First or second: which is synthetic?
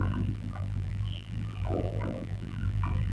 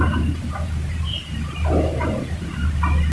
first